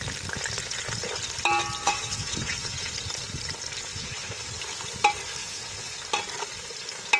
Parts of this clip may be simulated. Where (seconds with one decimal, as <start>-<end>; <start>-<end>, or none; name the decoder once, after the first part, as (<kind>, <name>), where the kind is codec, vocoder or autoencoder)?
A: 1.8-2.9 (vocoder, WaveNeXt); 3.9-4.6; 5.4-6.0